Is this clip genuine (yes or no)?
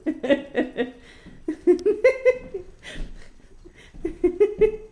yes